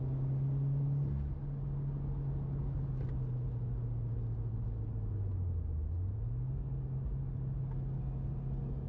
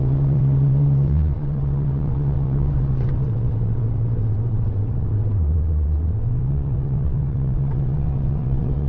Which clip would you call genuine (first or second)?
first